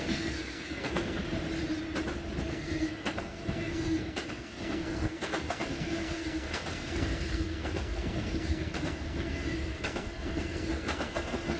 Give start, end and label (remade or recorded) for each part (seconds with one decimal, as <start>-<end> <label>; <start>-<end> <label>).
0.0-1.2 remade; 1.2-2.5 recorded; 2.5-11.6 remade